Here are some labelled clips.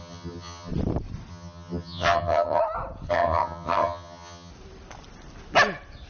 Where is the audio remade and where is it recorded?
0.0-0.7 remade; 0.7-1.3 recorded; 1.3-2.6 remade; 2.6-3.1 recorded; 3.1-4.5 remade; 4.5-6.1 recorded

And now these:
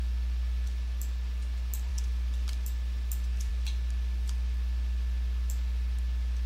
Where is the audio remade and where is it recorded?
0.0-6.5 recorded

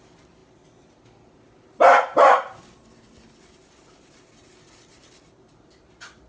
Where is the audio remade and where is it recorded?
0.0-6.3 recorded

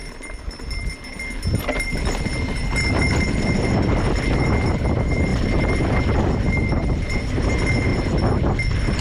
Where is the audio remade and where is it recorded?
0.0-5.3 recorded; 5.3-6.0 remade; 6.0-9.0 recorded